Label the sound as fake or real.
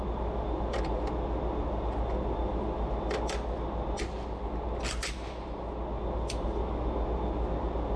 real